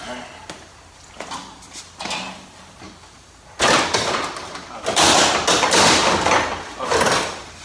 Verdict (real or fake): real